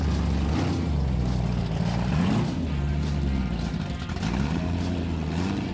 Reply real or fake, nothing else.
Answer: real